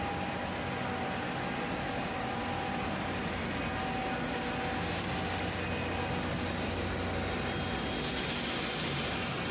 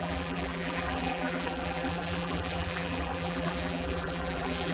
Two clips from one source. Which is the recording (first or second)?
first